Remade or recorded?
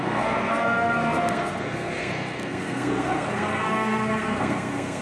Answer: remade